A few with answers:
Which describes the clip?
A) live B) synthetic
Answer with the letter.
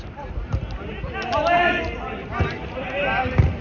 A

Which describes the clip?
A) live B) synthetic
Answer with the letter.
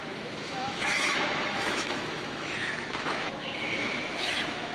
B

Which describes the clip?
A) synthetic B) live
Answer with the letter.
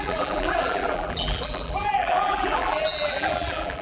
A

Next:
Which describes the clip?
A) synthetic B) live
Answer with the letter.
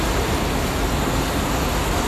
B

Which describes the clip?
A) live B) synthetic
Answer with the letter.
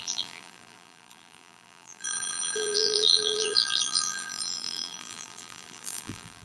B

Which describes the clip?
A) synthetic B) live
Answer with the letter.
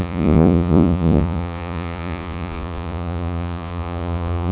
A